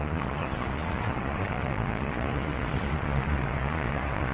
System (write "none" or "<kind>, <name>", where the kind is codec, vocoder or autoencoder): vocoder, Vocos